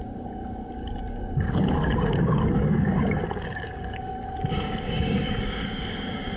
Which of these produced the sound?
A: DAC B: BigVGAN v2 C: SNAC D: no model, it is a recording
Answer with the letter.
A